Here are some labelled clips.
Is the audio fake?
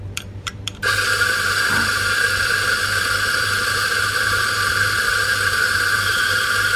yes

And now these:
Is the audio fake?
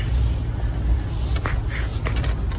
no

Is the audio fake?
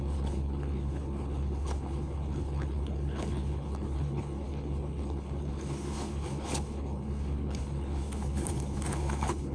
yes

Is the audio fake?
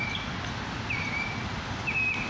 no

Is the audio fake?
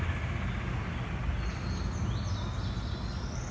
no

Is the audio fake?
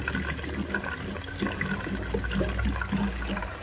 no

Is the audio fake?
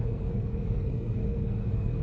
yes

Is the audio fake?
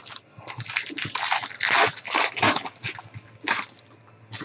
no